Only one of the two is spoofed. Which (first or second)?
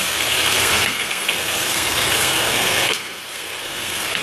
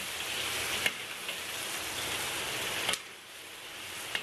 first